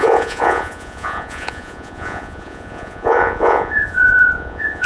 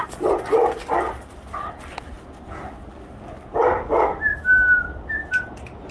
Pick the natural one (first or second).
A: second